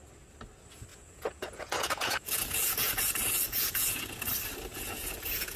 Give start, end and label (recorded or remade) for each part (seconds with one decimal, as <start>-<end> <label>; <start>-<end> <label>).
0.0-0.9 recorded; 0.9-4.3 remade; 4.3-4.7 recorded; 4.7-5.6 remade